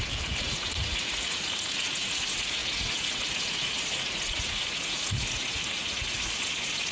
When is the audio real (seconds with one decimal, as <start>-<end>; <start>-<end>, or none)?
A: none